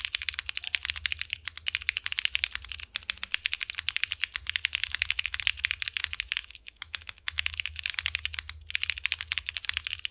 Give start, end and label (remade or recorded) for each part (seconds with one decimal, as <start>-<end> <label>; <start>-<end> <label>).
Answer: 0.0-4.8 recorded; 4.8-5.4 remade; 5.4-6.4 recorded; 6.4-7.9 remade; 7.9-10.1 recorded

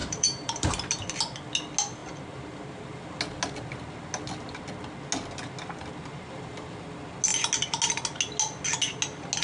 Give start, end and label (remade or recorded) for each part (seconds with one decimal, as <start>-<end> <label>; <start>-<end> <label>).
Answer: 0.0-0.7 remade; 0.7-6.1 recorded; 6.1-6.8 remade; 6.8-9.4 recorded

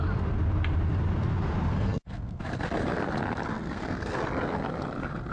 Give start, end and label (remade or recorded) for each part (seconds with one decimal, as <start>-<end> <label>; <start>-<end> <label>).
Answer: 0.0-1.7 recorded; 1.7-2.4 remade; 2.4-3.5 recorded; 3.5-4.2 remade; 4.2-5.3 recorded